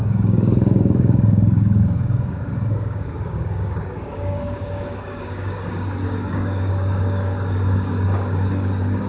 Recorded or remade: remade